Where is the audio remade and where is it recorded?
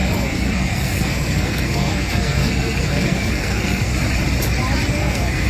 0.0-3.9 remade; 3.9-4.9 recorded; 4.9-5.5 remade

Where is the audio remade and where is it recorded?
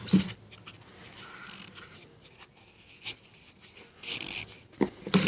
0.0-5.3 recorded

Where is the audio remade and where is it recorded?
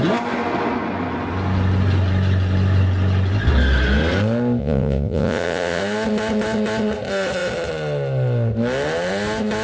0.0-4.6 recorded; 4.6-5.8 remade; 5.8-9.6 recorded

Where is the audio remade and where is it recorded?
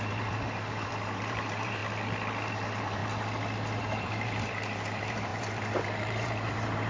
0.0-1.8 remade; 1.8-2.5 recorded; 2.5-3.0 remade; 3.0-3.8 recorded; 3.8-6.9 remade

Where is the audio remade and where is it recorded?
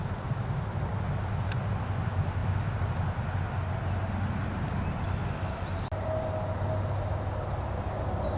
0.0-2.4 recorded; 2.4-2.9 remade; 2.9-8.4 recorded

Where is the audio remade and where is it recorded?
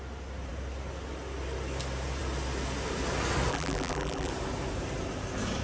0.0-3.5 recorded; 3.5-4.3 remade; 4.3-5.6 recorded